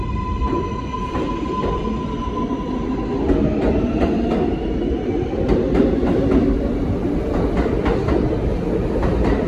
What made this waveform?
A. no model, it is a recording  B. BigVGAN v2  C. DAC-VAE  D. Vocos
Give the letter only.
A